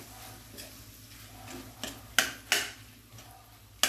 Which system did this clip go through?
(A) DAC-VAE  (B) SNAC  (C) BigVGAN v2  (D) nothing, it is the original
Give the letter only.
D